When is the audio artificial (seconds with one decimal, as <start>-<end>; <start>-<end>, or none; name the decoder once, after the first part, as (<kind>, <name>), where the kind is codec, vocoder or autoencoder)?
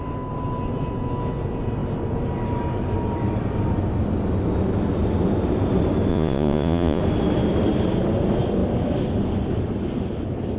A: 6.1-7.0 (vocoder, Vocos)